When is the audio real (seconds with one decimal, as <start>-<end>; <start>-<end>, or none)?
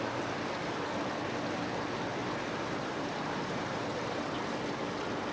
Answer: 0.0-2.2; 4.2-5.3